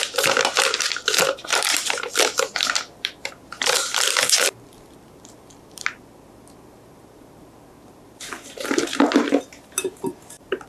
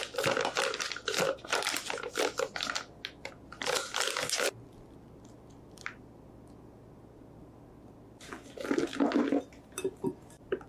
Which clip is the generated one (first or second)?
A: first